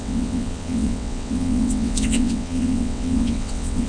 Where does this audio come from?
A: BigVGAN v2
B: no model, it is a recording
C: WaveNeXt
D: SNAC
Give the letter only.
C